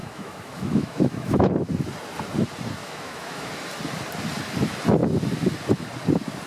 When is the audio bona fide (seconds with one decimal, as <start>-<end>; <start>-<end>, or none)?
1.5-2.8; 3.5-6.5